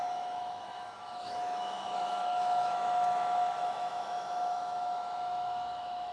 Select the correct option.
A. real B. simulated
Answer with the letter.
B